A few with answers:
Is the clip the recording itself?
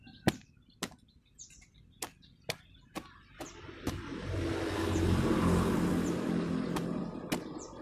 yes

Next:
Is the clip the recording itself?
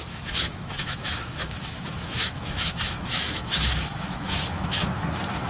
no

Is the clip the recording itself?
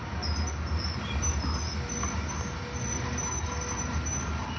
yes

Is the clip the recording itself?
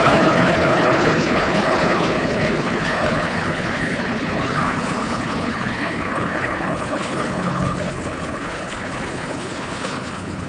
no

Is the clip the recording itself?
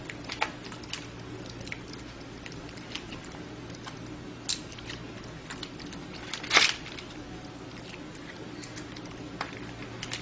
yes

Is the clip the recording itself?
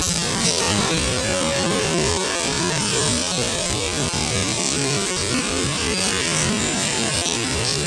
no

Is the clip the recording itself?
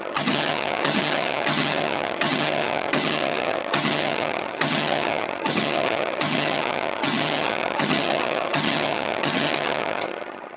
no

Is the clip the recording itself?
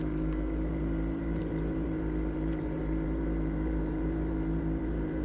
no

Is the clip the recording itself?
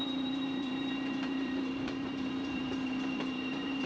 no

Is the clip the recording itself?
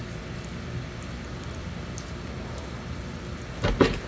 yes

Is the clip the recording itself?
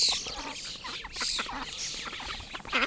yes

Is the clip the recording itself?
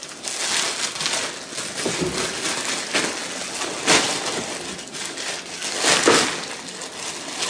yes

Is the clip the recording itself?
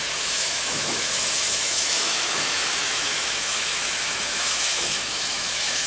no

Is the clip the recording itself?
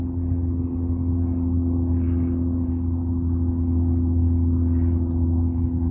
yes